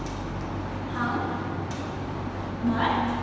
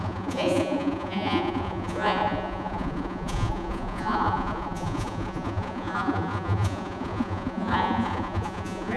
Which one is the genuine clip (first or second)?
first